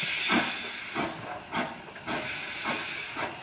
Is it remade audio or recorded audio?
recorded